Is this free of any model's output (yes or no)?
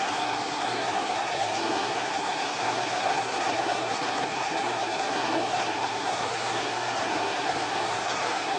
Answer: no